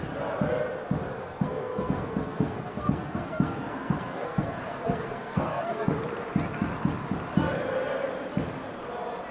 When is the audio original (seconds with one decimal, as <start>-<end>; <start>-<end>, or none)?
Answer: 0.0-1.2; 6.0-9.3